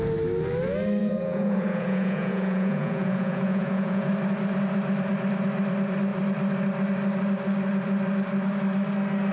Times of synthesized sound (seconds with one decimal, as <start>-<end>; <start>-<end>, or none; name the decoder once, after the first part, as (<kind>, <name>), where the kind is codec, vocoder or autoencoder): 1.0-4.1 (vocoder, Vocos)